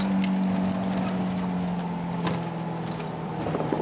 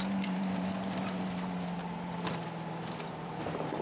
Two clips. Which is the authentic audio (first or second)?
first